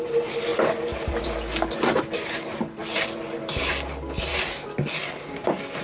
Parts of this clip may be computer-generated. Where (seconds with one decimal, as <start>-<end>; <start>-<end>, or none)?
0.5-2.0; 2.8-3.7